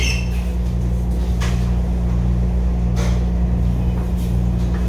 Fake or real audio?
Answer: real